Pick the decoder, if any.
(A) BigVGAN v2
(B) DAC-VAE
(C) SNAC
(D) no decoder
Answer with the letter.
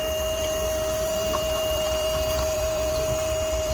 A